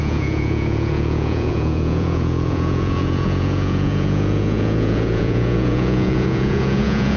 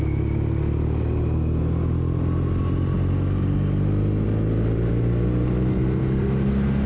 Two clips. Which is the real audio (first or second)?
second